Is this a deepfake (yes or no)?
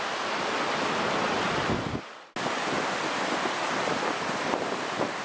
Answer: no